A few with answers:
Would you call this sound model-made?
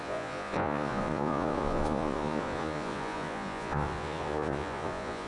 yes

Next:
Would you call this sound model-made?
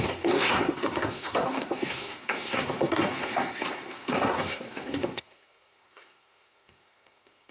yes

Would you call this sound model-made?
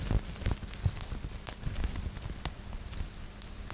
no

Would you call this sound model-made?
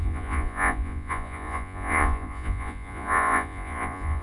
yes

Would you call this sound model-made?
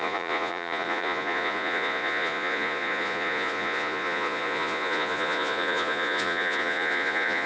yes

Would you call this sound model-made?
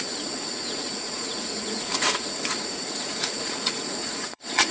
yes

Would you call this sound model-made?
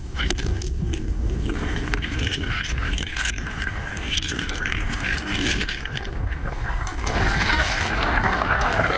yes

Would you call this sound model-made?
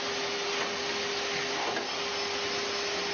no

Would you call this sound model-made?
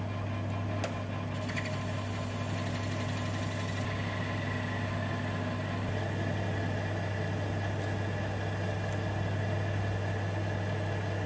no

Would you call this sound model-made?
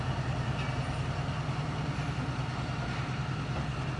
no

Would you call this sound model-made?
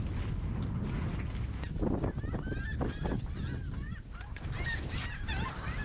no